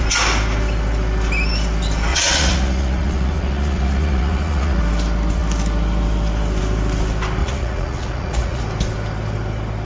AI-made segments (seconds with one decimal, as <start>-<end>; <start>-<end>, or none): 2.1-4.8; 7.4-8.6